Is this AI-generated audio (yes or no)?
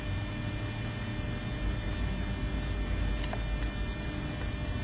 no